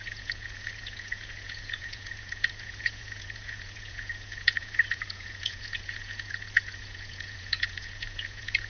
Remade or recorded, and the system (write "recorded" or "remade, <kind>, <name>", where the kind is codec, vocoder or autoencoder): remade, vocoder, Vocos